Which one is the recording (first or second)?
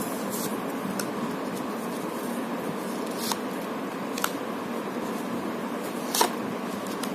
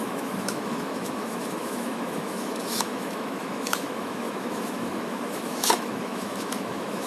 first